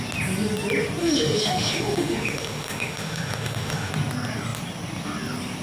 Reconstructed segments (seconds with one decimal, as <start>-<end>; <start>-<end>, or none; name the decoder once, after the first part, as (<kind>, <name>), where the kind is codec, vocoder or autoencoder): 1.0-3.9 (autoencoder, DAC-VAE)

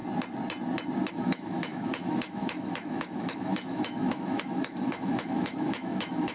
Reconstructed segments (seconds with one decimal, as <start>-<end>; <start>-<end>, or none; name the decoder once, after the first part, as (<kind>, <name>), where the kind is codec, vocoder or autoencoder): 1.1-6.3 (autoencoder, DAC-VAE)

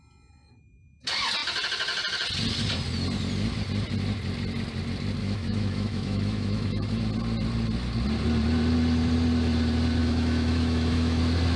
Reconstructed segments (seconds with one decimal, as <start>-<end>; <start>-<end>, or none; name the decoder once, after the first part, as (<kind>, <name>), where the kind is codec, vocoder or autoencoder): 5.2-7.0 (autoencoder, DAC-VAE); 10.0-11.2

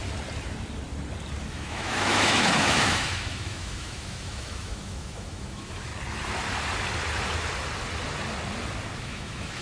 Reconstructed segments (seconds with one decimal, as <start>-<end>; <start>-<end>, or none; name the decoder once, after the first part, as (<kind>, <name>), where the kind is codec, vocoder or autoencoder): 1.5-5.9 (autoencoder, DAC-VAE); 9.0-9.6

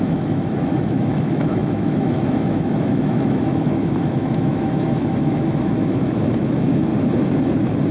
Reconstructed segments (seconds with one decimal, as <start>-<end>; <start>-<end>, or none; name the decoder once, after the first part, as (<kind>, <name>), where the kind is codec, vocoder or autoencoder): 0.0-6.9 (autoencoder, DAC-VAE)

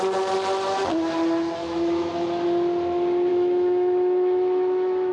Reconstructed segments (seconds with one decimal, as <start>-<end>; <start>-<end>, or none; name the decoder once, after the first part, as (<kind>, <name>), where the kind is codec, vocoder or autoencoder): 1.6-2.1 (autoencoder, DAC-VAE); 3.3-5.1

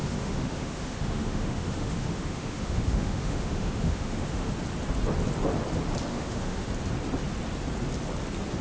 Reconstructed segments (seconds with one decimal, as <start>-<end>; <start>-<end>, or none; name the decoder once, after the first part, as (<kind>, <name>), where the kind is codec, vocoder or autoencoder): 0.0-4.5 (autoencoder, DAC-VAE); 6.1-6.7

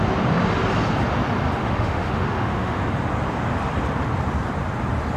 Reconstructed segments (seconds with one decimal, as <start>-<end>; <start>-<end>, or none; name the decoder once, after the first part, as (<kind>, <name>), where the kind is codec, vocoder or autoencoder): 1.6-2.8 (autoencoder, DAC-VAE)